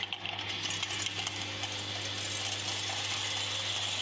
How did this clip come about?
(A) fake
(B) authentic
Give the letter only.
B